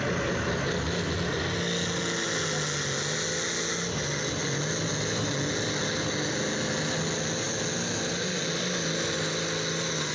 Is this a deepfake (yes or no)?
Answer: no